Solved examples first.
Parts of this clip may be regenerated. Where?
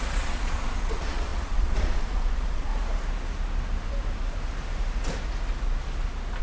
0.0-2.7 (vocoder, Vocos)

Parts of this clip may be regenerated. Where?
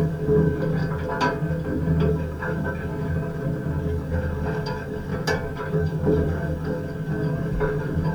0.0-0.8 (codec, DAC); 2.1-2.9; 3.8-5.1; 5.7-8.1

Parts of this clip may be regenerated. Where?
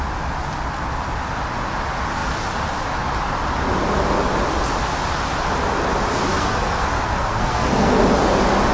6.3-8.0 (codec, SNAC)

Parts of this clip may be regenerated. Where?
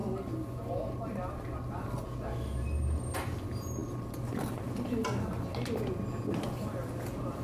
none